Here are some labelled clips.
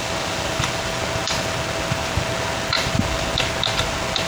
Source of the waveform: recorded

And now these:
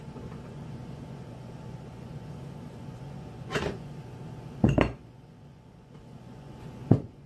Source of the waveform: remade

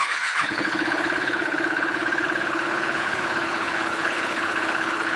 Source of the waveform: remade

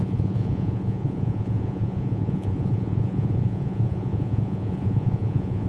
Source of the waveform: remade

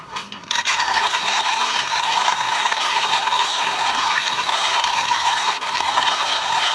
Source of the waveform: remade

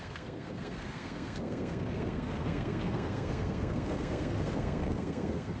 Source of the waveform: remade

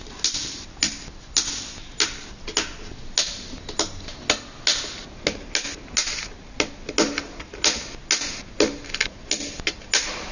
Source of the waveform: recorded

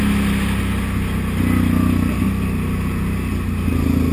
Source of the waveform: recorded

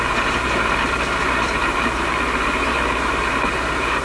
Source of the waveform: remade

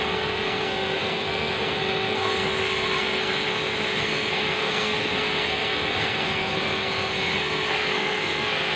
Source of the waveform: remade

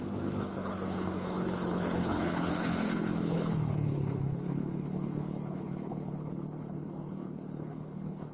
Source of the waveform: remade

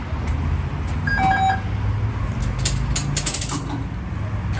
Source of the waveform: recorded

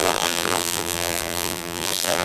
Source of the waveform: remade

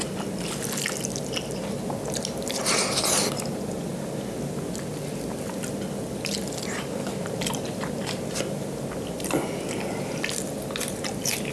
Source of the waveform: recorded